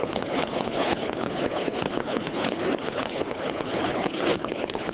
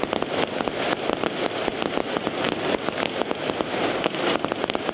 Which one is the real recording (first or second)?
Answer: second